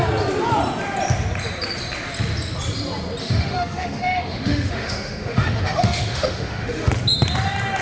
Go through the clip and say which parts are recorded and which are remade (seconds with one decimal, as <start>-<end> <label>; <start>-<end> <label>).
0.0-3.2 recorded; 3.2-6.9 remade; 6.9-7.8 recorded